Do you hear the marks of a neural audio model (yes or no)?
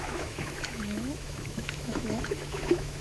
yes